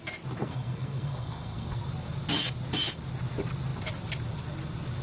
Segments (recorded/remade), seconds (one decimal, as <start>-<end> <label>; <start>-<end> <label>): 0.0-0.4 recorded; 0.4-1.8 remade; 1.8-5.0 recorded